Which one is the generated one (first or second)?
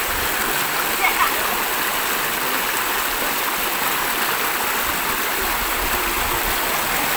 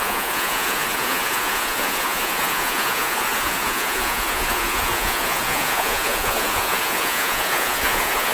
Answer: second